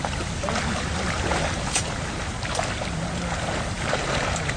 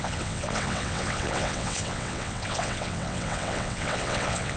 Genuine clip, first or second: first